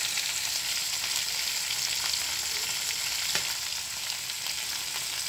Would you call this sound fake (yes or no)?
no